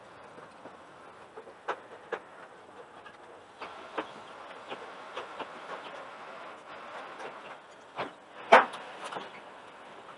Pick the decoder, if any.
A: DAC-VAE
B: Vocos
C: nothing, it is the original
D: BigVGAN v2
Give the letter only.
C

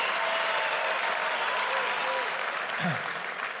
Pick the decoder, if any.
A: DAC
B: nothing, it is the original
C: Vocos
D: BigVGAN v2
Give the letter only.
B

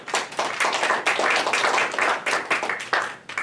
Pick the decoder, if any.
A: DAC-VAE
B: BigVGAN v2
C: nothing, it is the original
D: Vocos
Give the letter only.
C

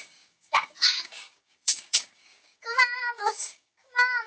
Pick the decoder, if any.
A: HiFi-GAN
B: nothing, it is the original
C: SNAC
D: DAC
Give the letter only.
D